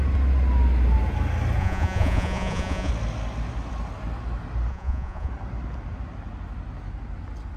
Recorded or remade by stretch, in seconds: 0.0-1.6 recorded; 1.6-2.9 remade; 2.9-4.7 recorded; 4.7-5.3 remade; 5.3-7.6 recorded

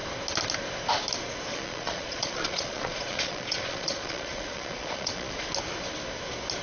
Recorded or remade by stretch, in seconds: 0.0-1.5 recorded; 1.5-5.5 remade; 5.5-6.6 recorded

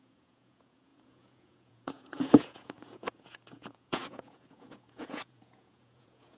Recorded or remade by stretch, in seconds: 0.0-6.4 remade